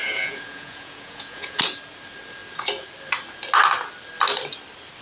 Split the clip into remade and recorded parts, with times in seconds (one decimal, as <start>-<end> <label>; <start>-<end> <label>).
0.0-1.6 remade; 1.6-5.0 recorded